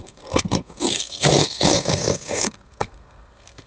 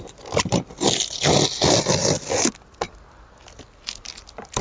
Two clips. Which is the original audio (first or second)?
second